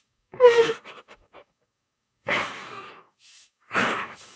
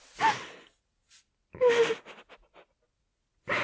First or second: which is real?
second